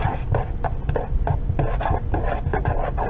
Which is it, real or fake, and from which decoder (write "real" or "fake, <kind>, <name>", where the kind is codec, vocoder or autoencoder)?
real